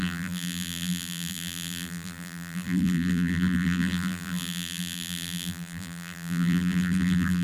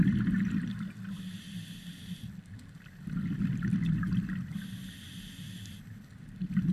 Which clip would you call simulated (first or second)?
first